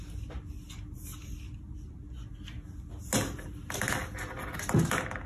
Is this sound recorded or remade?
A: recorded